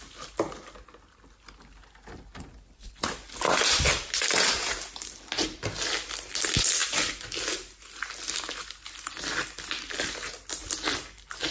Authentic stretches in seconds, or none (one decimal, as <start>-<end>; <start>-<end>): 0.0-11.5

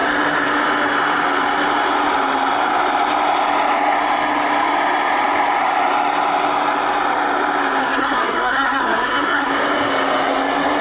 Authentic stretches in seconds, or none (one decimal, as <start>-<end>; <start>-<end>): 0.0-7.8; 9.5-10.8

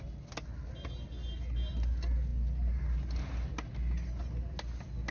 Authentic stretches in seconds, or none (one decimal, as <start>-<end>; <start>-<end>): 0.0-5.1

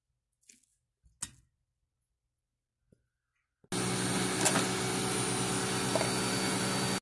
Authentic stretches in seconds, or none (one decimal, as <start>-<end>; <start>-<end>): 0.0-7.0

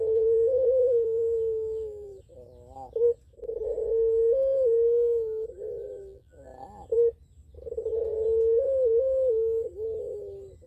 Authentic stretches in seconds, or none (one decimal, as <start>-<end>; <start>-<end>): 2.1-6.0; 6.5-10.7

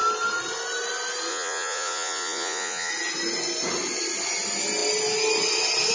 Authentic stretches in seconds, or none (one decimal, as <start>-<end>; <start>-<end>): 0.0-1.3; 2.9-5.9

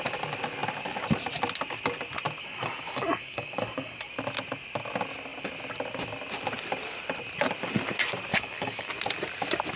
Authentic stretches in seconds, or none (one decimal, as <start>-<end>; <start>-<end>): 0.0-2.4; 4.1-8.3; 8.9-9.8

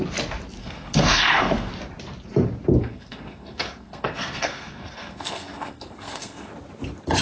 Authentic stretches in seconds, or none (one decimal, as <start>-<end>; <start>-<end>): 0.0-0.6; 1.7-2.8; 6.5-7.2